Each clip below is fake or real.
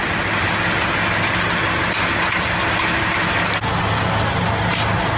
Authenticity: real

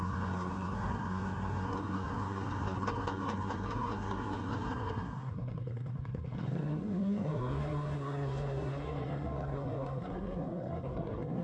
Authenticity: fake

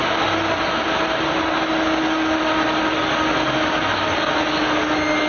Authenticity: real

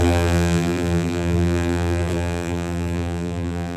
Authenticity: fake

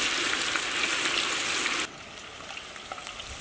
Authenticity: real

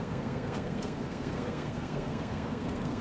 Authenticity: fake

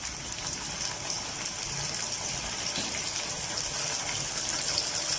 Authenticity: real